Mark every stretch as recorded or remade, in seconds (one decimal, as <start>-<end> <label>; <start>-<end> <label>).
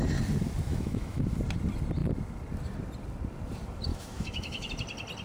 0.0-0.7 recorded; 0.7-1.2 remade; 1.2-3.9 recorded; 3.9-4.7 remade; 4.7-5.2 recorded